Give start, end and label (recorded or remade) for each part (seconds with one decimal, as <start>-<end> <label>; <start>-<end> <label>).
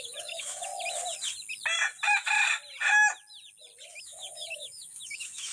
0.0-0.7 remade; 0.7-4.0 recorded; 4.0-5.5 remade